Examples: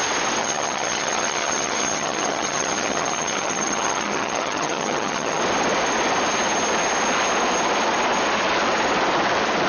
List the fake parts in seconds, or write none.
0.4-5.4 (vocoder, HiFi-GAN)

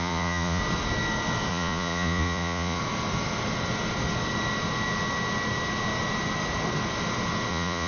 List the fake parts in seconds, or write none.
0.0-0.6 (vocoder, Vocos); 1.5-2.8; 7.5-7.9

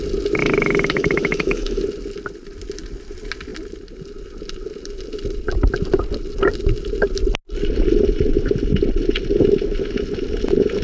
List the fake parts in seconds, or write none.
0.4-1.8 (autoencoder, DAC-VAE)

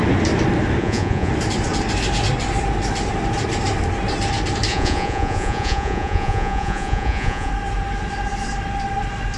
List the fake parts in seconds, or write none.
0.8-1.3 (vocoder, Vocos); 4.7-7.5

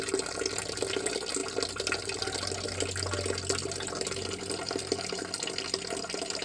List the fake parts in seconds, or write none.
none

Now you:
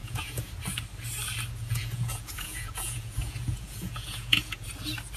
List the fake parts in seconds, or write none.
0.0-0.5 (vocoder, Vocos); 1.6-4.7

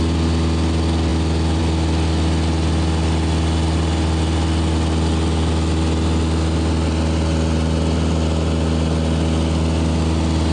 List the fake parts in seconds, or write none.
none